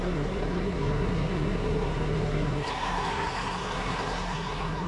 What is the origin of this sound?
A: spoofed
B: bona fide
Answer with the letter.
A